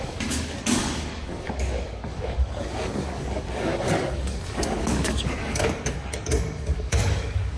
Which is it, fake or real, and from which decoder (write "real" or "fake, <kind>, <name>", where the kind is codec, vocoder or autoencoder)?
fake, codec, DAC